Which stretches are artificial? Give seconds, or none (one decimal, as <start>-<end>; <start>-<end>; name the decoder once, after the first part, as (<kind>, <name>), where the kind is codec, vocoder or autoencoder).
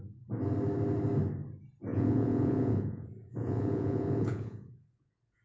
1.9-5.4 (vocoder, Vocos)